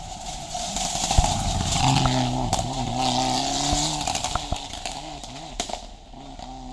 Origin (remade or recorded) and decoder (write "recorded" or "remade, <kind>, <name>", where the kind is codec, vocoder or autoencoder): recorded